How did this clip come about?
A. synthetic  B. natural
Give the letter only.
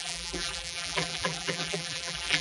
A